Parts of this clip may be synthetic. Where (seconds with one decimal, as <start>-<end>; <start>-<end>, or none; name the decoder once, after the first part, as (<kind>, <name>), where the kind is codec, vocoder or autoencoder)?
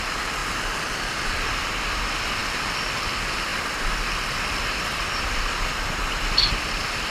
0.0-0.4 (vocoder, BigVGAN v2); 0.9-3.5; 4.6-7.1